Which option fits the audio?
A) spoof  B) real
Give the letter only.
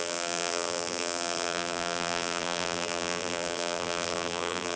A